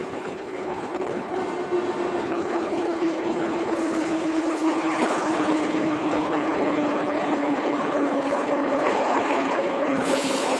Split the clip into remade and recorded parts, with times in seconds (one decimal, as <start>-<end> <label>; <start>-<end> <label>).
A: 0.0-1.4 remade; 1.4-2.2 recorded; 2.2-10.6 remade

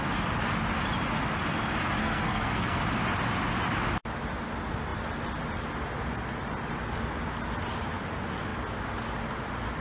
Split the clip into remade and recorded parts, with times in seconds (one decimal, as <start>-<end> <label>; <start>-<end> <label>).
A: 0.0-2.0 recorded; 2.0-2.8 remade; 2.8-9.8 recorded

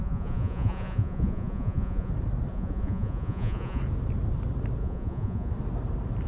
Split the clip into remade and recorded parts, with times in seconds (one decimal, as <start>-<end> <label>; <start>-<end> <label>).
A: 0.0-2.1 remade; 2.1-2.5 recorded; 2.5-3.8 remade; 3.8-4.8 recorded; 4.8-5.5 remade; 5.5-6.3 recorded

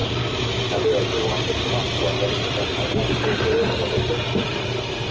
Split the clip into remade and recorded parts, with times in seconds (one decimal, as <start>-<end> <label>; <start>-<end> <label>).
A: 0.0-5.1 recorded

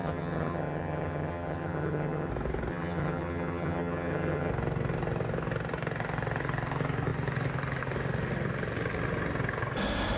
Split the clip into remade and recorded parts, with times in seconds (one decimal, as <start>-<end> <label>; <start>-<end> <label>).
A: 0.0-2.3 remade; 2.3-2.7 recorded; 2.7-4.5 remade; 4.5-10.2 recorded

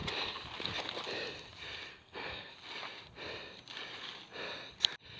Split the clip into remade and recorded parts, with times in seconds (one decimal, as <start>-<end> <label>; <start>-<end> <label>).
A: 0.0-1.9 recorded; 1.9-2.5 remade; 2.5-5.2 recorded